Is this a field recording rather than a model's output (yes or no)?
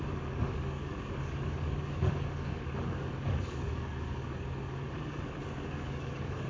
no